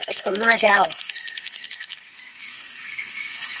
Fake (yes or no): yes